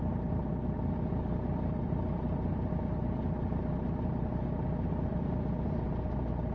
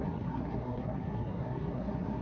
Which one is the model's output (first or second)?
second